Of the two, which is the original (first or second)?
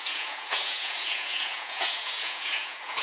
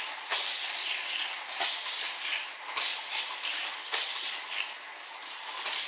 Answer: second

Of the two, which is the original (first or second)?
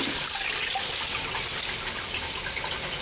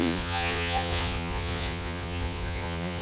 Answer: first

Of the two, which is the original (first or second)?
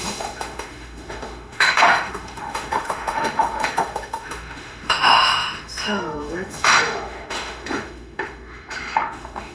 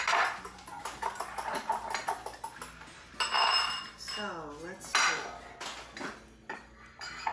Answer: second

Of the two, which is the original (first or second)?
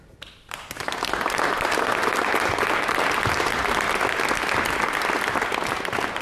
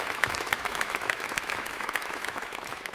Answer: first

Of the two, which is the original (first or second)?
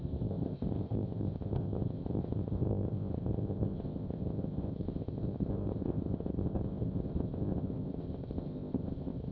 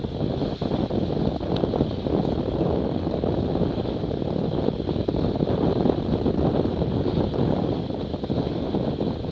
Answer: second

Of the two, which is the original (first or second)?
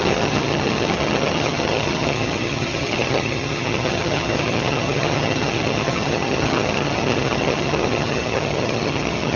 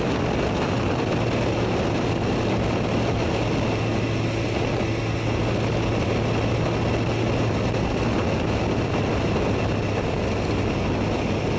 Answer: second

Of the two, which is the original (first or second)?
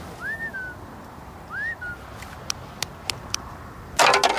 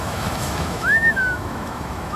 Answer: first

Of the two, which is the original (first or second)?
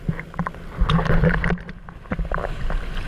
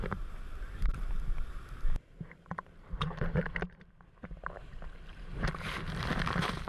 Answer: first